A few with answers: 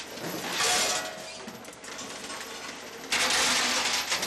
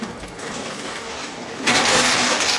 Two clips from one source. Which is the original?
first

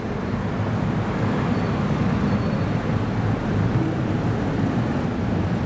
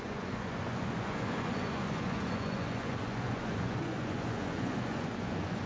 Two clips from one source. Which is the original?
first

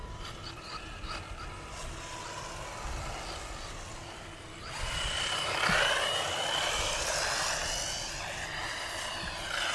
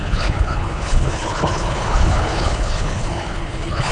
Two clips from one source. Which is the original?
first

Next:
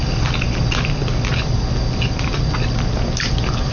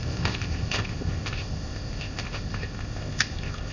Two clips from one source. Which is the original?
first